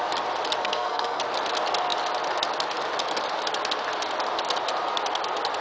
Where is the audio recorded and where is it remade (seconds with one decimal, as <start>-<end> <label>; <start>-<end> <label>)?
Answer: 0.0-0.6 recorded; 0.6-1.2 remade; 1.2-5.6 recorded